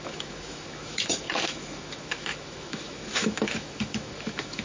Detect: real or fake fake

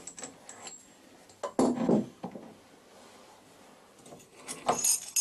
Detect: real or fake real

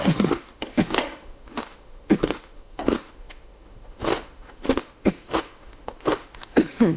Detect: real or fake fake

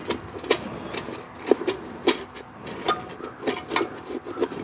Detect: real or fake real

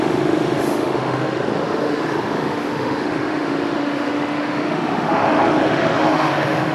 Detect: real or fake fake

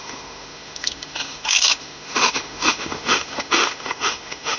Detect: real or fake fake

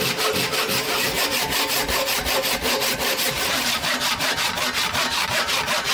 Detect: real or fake real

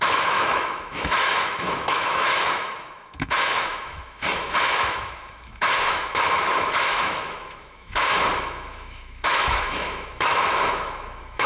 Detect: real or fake fake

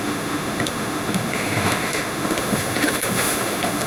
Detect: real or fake fake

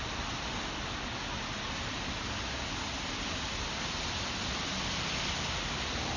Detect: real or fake real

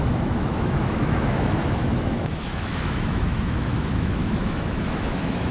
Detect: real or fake fake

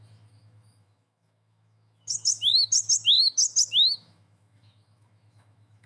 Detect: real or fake fake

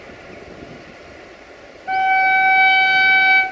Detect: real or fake real